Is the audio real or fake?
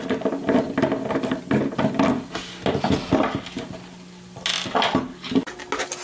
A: real